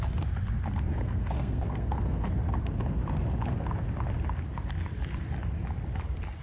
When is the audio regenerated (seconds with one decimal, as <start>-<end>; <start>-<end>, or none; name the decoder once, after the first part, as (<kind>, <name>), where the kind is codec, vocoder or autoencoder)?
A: 0.9-2.3 (codec, SNAC)